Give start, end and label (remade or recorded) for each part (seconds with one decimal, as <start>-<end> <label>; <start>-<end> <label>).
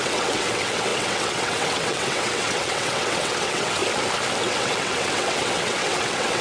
0.0-3.8 remade; 3.8-4.4 recorded; 4.4-6.4 remade